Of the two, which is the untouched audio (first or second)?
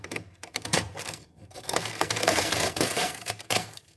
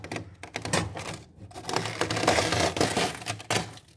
second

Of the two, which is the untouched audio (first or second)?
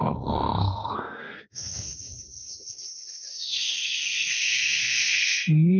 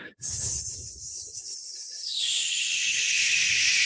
second